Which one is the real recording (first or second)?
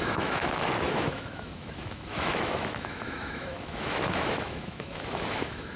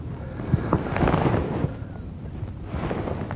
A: second